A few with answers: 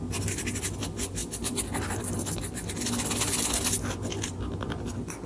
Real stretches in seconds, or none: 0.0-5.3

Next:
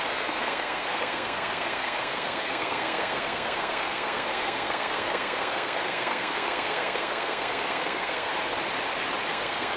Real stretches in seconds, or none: 8.3-9.3

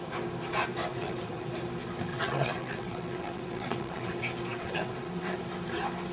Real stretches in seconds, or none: 0.0-0.9; 1.5-2.1; 4.1-4.5; 5.4-6.1

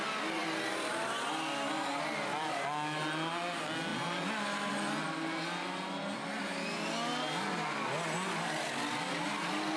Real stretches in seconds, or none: 0.0-9.8

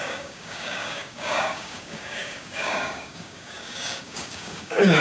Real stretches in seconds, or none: none